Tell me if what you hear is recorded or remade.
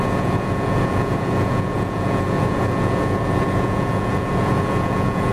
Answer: remade